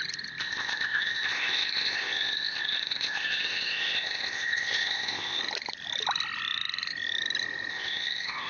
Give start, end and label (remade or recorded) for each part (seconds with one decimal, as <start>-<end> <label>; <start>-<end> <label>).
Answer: 0.0-0.4 recorded; 0.4-5.4 remade; 5.4-7.7 recorded; 7.7-8.5 remade